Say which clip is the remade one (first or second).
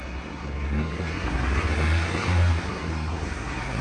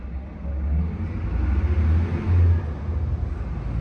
first